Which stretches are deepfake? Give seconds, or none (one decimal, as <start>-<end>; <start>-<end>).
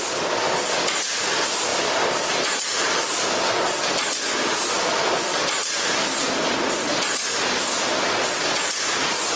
none